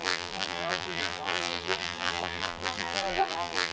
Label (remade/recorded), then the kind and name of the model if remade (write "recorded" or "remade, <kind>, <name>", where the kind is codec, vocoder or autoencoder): remade, vocoder, BigVGAN v2